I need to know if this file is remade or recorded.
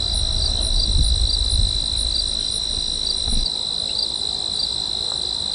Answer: recorded